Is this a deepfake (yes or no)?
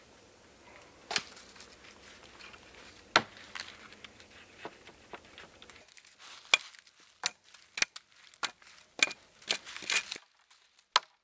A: no